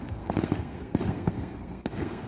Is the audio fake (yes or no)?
yes